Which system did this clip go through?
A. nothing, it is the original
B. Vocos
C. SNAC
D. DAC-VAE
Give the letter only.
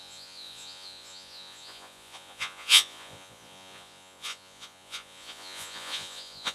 B